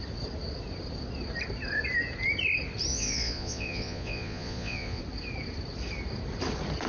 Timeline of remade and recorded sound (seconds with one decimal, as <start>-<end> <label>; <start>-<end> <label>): 0.0-2.9 recorded; 2.9-5.0 remade; 5.0-6.9 recorded

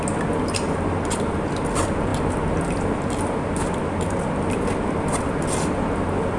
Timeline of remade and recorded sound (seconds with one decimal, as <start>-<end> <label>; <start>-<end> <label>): 0.0-6.4 recorded

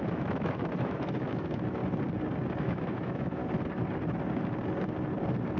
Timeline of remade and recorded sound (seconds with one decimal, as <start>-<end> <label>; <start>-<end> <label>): 0.0-1.8 remade; 1.8-2.6 recorded; 2.6-3.4 remade; 3.4-5.6 recorded

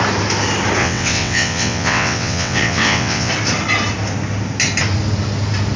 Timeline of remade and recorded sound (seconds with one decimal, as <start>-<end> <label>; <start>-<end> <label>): 0.0-0.8 recorded; 0.8-3.3 remade; 3.3-5.8 recorded

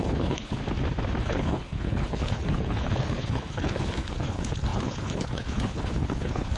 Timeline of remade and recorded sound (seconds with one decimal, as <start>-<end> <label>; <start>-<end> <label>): 0.0-0.6 remade; 0.6-1.2 recorded; 1.2-6.6 remade

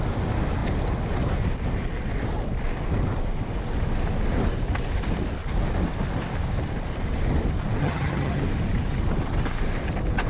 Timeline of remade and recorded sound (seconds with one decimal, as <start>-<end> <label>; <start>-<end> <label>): 0.0-7.8 recorded; 7.8-8.4 remade; 8.4-10.3 recorded

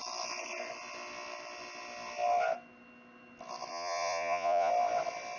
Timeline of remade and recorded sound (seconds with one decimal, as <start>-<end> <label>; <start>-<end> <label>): 0.0-3.7 recorded; 3.7-4.7 remade; 4.7-5.4 recorded